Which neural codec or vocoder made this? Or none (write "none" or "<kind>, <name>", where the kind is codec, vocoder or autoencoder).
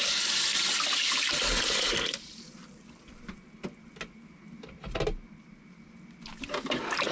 none